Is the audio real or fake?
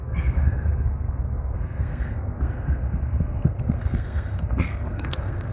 fake